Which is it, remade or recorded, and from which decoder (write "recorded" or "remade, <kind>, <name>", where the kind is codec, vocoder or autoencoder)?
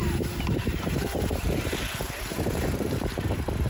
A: remade, vocoder, BigVGAN v2